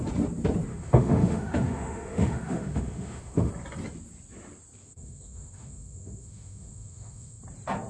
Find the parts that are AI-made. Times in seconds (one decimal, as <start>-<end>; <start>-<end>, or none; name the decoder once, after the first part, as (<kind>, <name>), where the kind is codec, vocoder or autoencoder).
0.7-3.5 (autoencoder, DAC-VAE); 4.8-7.4